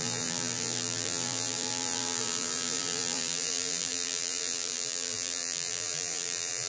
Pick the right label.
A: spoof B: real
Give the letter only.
A